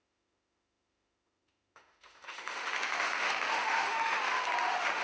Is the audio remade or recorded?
remade